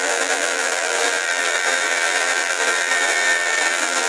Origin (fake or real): fake